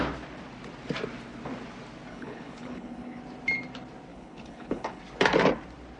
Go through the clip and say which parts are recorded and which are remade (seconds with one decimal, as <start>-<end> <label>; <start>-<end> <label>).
0.0-2.1 recorded; 2.1-3.2 remade; 3.2-4.1 recorded; 4.1-5.0 remade; 5.0-6.0 recorded